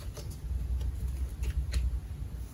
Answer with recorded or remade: recorded